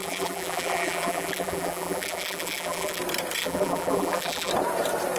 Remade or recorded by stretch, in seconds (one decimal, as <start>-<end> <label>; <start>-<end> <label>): 0.0-3.0 remade; 3.0-3.4 recorded; 3.4-4.5 remade; 4.5-5.2 recorded

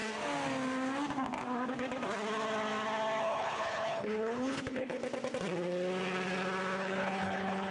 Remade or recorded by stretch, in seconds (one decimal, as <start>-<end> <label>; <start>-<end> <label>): 0.0-3.2 recorded; 3.2-5.0 remade; 5.0-6.8 recorded; 6.8-7.7 remade

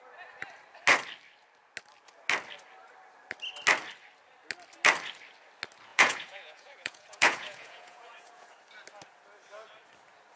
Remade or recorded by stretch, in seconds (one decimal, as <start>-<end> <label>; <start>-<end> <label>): 0.0-5.9 recorded; 5.9-8.5 remade; 8.5-10.4 recorded

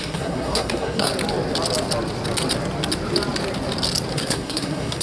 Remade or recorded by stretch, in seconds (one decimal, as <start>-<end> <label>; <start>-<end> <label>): 0.0-1.1 remade; 1.1-4.1 recorded; 4.1-5.0 remade